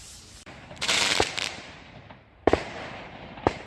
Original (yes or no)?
no